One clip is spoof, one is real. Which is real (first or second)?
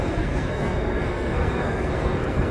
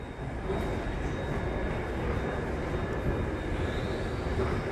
second